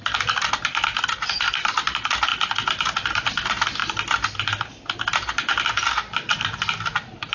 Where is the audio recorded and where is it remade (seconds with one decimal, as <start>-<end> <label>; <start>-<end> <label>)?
0.0-7.3 recorded